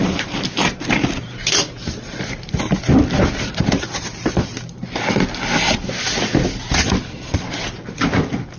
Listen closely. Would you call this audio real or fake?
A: real